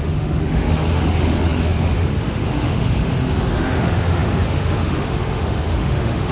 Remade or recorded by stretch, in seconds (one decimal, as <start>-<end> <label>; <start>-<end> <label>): 0.0-6.3 remade